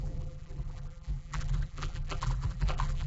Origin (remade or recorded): remade